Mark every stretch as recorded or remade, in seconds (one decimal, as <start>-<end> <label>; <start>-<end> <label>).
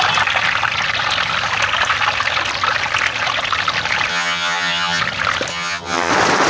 0.0-4.1 recorded; 4.1-5.0 remade; 5.0-5.5 recorded; 5.5-6.1 remade; 6.1-6.5 recorded